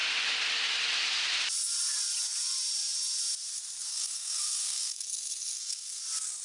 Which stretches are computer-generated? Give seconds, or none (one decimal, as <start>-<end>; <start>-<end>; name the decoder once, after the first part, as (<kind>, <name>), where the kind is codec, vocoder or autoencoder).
3.9-6.0 (codec, SNAC)